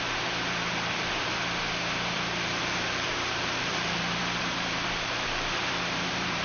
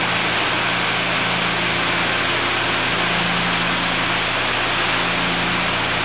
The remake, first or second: first